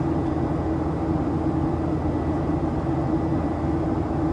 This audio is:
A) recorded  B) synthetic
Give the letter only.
A